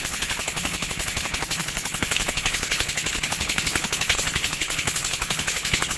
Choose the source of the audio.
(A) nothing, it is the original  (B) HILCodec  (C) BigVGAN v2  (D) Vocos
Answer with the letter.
B